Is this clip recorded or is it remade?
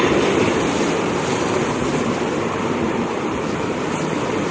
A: remade